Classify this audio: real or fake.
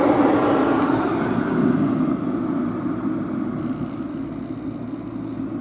real